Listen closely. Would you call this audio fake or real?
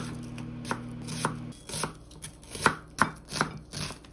real